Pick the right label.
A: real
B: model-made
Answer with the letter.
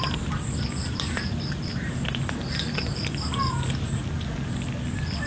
A